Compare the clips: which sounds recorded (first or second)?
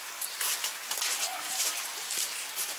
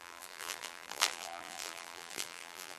first